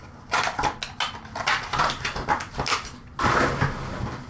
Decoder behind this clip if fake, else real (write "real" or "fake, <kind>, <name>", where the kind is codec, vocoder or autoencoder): real